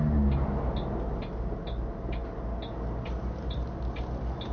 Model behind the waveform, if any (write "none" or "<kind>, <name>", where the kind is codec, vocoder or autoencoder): none